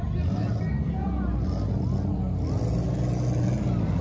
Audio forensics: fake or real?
real